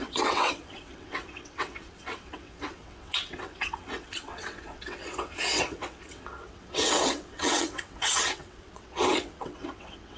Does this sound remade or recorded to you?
remade